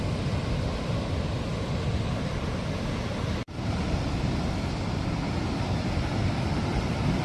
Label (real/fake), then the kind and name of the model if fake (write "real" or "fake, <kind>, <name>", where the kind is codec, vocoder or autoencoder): real